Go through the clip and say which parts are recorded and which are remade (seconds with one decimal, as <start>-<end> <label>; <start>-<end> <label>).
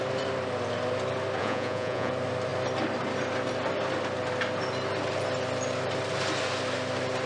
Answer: 0.0-1.4 recorded; 1.4-2.1 remade; 2.1-7.3 recorded